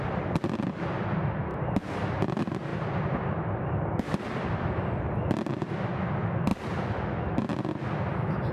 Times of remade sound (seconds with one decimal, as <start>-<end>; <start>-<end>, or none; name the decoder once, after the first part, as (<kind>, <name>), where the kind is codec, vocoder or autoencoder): none